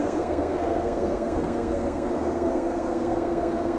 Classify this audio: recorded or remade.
remade